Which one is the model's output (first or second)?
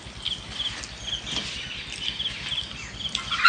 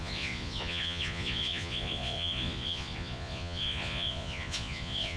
second